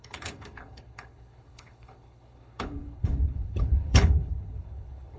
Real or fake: fake